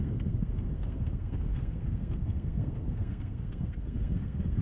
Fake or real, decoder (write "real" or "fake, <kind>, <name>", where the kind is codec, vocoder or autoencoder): fake, codec, SNAC